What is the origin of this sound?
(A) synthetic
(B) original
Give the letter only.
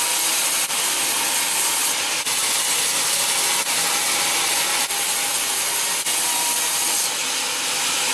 B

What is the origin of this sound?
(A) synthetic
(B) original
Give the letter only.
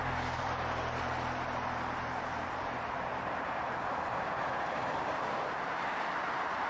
A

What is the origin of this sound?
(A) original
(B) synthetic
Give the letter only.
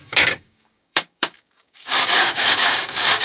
B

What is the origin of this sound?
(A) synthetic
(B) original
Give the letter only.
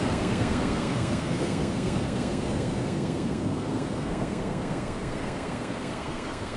A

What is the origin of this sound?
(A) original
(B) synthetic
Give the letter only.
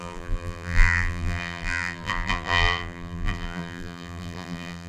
B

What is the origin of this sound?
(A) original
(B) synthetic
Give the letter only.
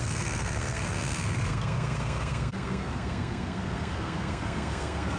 B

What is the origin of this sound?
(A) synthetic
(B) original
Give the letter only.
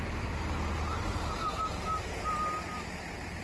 B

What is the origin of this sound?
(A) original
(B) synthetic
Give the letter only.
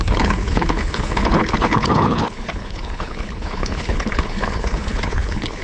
B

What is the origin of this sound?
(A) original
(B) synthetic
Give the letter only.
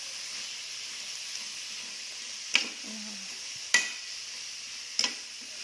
A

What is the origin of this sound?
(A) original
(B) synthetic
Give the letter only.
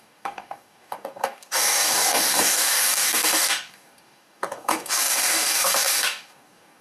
B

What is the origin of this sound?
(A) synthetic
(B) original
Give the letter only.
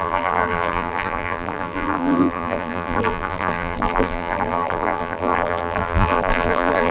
A